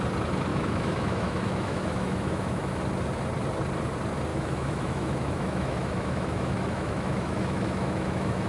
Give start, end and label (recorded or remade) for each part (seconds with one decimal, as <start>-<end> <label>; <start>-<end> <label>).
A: 0.0-0.5 recorded; 0.5-2.8 remade; 2.8-4.3 recorded; 4.3-8.5 remade